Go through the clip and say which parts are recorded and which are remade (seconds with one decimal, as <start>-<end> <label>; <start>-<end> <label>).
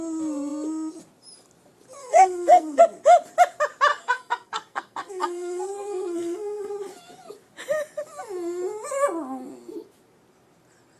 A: 0.0-2.0 recorded; 2.0-2.8 remade; 2.8-3.9 recorded; 3.9-6.7 remade; 6.7-11.0 recorded